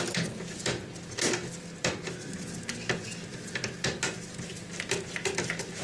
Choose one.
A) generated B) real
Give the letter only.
B